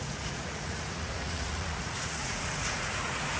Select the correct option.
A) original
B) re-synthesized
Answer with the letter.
B